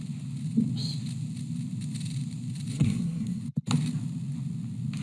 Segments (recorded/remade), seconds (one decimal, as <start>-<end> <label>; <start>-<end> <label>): 0.0-2.7 recorded; 2.7-3.4 remade; 3.4-5.0 recorded